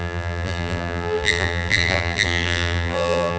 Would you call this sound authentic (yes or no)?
no